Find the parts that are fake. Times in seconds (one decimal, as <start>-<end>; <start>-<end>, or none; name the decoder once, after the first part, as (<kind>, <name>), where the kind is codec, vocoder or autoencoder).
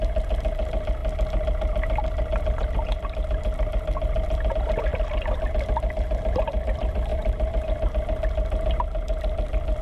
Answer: 4.9-5.5 (vocoder, BigVGAN v2); 7.1-7.9